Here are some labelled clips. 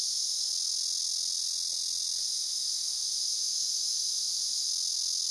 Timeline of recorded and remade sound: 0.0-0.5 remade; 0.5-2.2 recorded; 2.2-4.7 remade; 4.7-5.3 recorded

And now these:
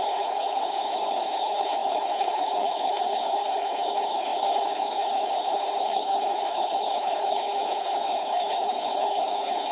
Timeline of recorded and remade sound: 0.0-9.7 remade

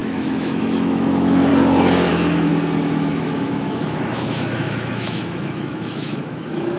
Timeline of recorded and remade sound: 0.0-1.5 remade; 1.5-2.1 recorded; 2.1-2.5 remade; 2.5-3.1 recorded; 3.1-6.8 remade

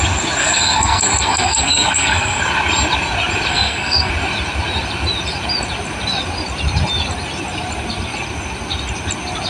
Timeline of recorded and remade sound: 0.0-0.4 recorded; 0.4-2.4 remade; 2.4-3.5 recorded; 3.5-4.1 remade; 4.1-9.5 recorded

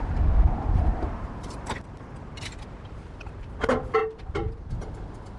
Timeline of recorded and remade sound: 0.0-0.9 recorded; 0.9-3.5 remade; 3.5-4.0 recorded; 4.0-4.7 remade; 4.7-5.4 recorded